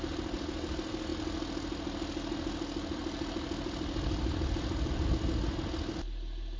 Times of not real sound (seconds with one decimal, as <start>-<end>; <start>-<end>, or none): 1.1-5.1